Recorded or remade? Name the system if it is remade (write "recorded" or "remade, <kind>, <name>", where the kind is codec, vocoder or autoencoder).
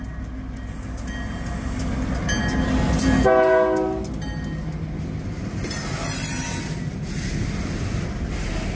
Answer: recorded